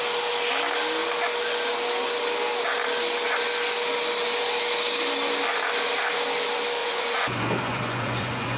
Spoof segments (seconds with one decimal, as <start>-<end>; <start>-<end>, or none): 6.8-8.6